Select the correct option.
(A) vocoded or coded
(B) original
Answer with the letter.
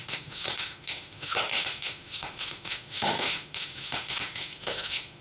A